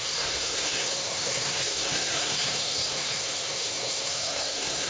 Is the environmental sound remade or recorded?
remade